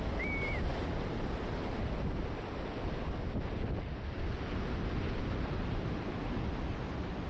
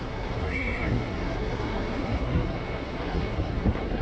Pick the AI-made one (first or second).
second